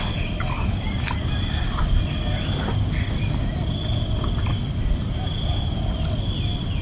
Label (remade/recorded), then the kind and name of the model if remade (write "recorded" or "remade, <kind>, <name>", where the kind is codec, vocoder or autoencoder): remade, vocoder, BigVGAN v2